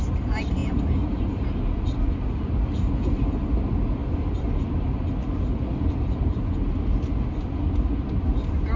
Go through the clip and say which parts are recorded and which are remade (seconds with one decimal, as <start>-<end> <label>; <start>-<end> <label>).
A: 0.0-8.8 recorded